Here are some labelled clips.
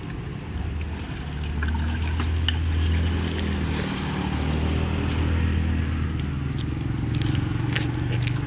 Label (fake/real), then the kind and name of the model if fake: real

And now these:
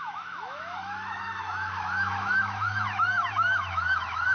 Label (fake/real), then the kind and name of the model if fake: fake, autoencoder, DAC-VAE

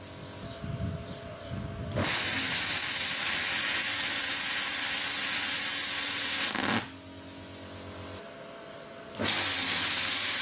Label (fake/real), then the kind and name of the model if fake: real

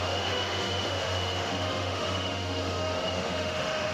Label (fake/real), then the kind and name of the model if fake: fake, autoencoder, DAC-VAE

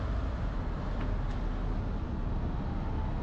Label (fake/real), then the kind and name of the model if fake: real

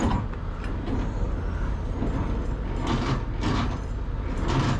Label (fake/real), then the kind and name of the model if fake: real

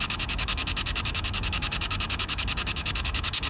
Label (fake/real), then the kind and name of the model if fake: fake, autoencoder, DAC-VAE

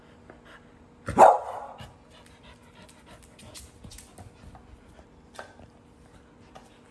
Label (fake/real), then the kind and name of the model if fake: real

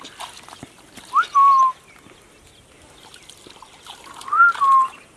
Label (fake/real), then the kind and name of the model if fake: real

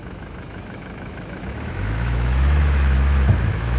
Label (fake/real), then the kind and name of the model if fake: fake, autoencoder, DAC-VAE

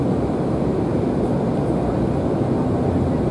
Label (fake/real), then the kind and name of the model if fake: real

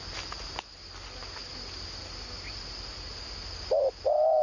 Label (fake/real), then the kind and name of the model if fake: real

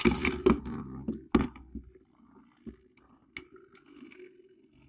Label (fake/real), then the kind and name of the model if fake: real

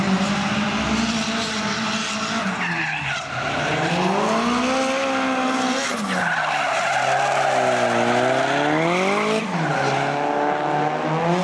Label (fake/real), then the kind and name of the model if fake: real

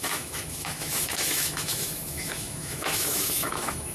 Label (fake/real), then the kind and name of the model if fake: fake, autoencoder, DAC-VAE